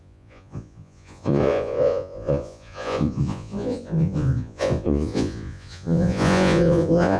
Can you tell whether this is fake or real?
fake